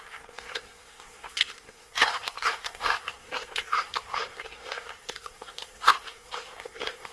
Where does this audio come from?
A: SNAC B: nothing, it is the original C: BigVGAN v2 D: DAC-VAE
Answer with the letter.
A